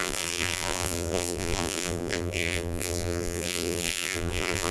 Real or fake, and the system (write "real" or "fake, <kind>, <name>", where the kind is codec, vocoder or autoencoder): fake, vocoder, BigVGAN v2